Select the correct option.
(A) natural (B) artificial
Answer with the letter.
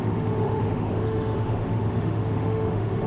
B